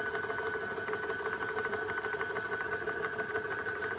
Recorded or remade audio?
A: recorded